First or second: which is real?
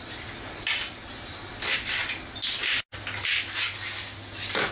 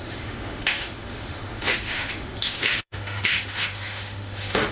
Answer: first